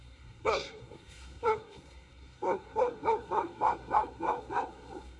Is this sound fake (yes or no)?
yes